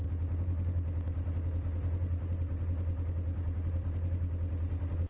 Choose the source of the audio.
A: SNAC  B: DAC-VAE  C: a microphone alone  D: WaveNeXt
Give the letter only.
C